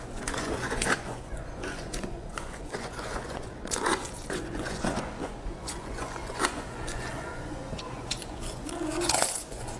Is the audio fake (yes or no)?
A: yes